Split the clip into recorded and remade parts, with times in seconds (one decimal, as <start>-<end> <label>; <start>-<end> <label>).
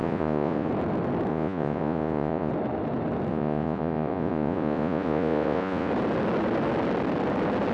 0.0-0.7 remade; 0.7-1.3 recorded; 1.3-2.5 remade; 2.5-3.3 recorded; 3.3-5.9 remade; 5.9-7.7 recorded